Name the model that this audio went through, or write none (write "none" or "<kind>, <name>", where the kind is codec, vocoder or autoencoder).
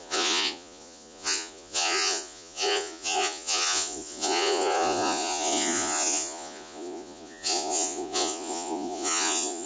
vocoder, Vocos